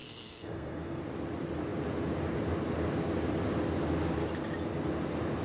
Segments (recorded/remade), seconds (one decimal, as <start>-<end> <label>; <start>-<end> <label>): 0.0-1.0 remade; 1.0-5.4 recorded